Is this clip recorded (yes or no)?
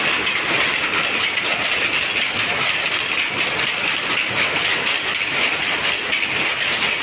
yes